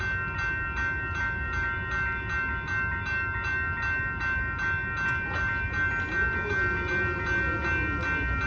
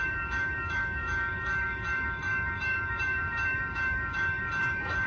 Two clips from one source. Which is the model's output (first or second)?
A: second